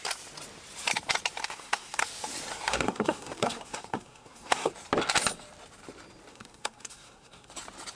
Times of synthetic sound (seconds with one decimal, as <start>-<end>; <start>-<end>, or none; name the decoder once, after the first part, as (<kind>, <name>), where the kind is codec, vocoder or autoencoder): 1.4-2.0 (codec, SNAC); 2.7-4.7; 6.3-7.5